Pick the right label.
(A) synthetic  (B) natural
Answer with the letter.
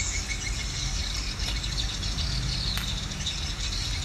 B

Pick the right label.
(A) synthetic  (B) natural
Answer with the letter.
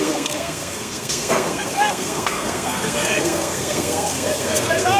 A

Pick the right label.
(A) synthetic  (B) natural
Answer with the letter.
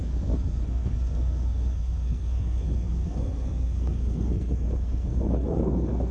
A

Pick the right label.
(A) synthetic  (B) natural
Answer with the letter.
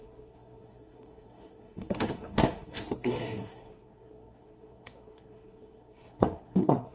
A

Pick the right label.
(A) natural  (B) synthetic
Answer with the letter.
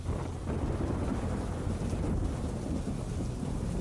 A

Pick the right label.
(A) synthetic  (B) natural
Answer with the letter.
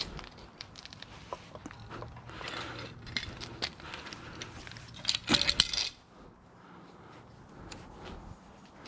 B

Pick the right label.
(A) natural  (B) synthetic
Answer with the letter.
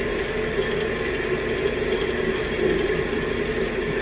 A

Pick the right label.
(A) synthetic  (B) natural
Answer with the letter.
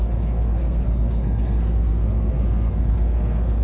A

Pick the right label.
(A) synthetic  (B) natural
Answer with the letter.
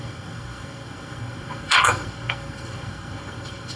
A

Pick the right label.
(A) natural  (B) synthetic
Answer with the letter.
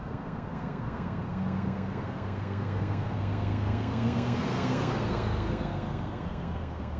B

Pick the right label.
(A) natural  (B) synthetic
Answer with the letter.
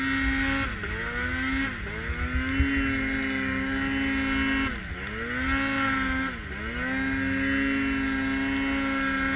A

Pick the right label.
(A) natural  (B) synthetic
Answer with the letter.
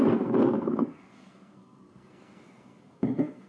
B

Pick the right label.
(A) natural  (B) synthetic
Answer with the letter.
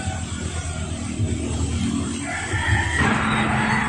A